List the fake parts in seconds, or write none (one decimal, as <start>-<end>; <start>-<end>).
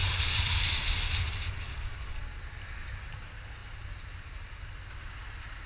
0.0-0.6; 3.6-4.7